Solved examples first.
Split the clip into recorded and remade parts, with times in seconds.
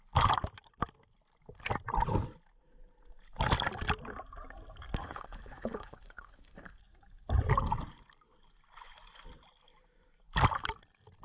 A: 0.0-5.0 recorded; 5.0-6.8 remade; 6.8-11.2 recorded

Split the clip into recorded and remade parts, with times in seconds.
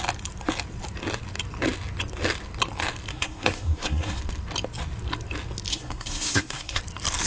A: 0.0-3.1 recorded; 3.1-4.2 remade; 4.2-5.7 recorded; 5.7-6.8 remade; 6.8-7.3 recorded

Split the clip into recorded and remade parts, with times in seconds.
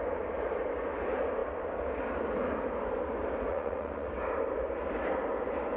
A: 0.0-3.5 recorded; 3.5-4.1 remade; 4.1-5.8 recorded